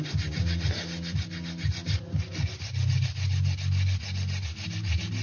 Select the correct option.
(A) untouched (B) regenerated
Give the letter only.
A